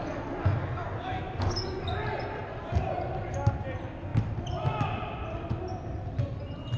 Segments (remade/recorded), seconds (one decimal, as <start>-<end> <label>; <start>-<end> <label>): 0.0-4.1 recorded; 4.1-5.6 remade; 5.6-6.8 recorded